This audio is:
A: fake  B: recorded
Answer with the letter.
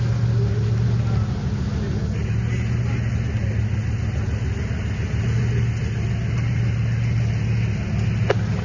B